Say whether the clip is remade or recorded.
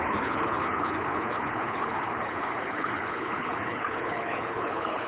remade